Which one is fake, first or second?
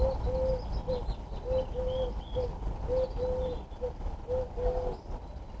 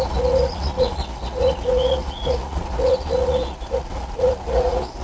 second